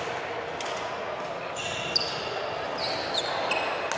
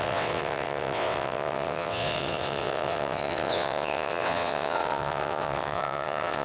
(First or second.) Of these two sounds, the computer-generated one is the second